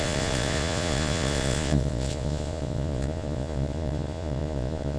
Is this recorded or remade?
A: remade